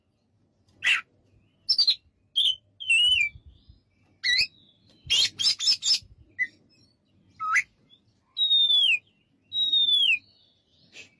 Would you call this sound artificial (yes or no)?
no